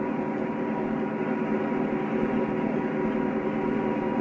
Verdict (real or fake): real